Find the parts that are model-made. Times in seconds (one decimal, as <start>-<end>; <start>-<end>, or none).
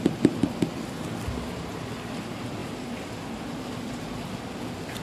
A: none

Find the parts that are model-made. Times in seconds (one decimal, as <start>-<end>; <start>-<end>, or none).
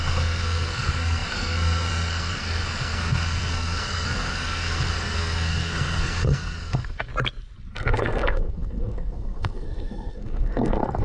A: 0.0-7.1; 7.7-11.0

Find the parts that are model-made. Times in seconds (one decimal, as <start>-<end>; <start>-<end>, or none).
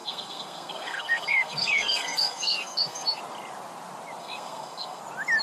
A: 0.0-3.2; 4.2-5.0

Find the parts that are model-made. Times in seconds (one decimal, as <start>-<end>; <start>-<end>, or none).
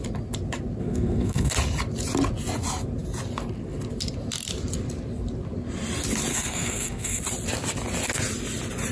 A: 0.8-1.5; 6.3-7.2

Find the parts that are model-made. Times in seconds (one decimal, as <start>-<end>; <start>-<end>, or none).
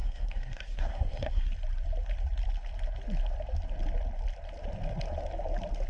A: 0.0-1.5